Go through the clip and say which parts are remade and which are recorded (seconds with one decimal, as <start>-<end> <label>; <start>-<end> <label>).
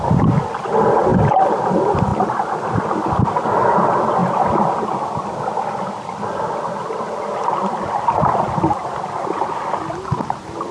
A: 0.0-10.7 recorded